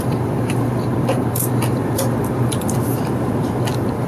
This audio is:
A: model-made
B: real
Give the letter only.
A